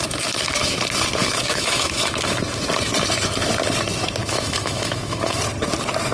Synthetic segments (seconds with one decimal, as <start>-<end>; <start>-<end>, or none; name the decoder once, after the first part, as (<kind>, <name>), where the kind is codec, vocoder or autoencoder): 1.2-2.4 (autoencoder, DAC-VAE); 4.2-5.4